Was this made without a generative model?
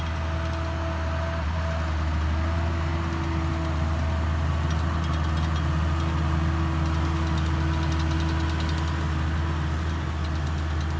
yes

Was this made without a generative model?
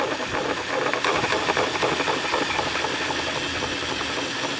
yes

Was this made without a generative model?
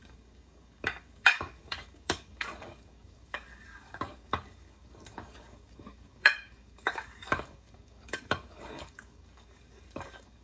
no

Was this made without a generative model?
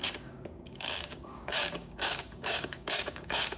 no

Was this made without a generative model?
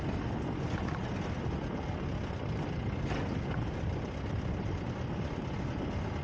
yes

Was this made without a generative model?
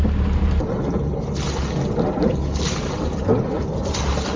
yes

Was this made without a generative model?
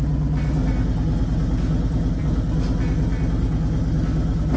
yes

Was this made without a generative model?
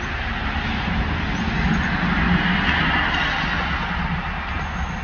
yes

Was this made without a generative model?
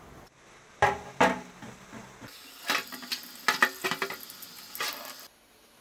yes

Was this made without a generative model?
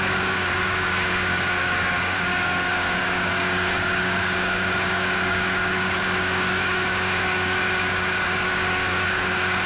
no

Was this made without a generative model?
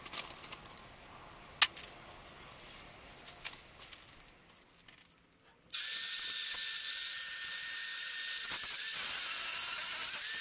yes